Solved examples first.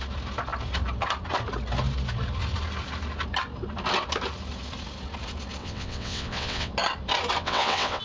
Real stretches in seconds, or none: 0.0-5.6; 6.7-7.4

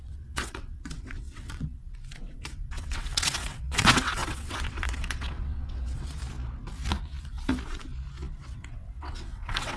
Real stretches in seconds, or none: 6.2-8.4

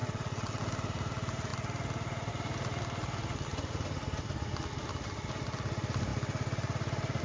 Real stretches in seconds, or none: 0.6-7.2